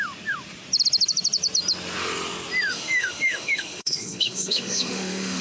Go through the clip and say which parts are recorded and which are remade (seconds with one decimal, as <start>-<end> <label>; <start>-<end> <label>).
0.0-2.7 recorded; 2.7-5.4 remade